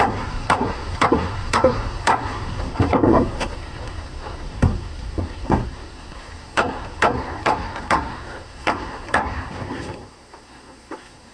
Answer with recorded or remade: remade